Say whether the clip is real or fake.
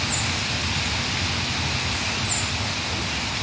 real